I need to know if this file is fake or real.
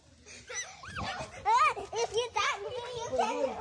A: real